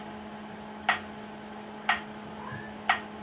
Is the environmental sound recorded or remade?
recorded